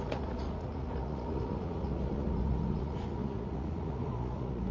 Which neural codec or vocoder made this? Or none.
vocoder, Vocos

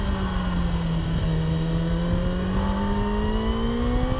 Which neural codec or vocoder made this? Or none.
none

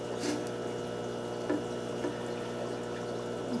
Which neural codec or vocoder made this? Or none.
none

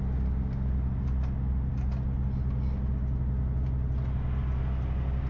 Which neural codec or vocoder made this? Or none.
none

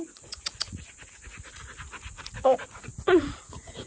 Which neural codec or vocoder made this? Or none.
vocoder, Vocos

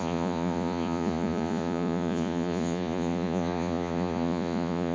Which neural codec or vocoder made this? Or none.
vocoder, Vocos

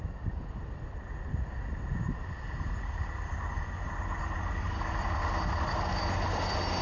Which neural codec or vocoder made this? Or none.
none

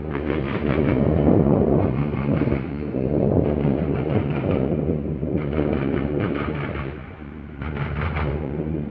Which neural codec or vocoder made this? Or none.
vocoder, Vocos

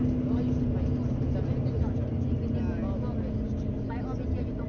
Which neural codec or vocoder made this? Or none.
none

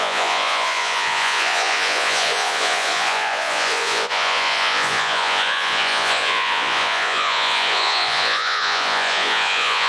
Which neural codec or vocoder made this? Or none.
vocoder, Vocos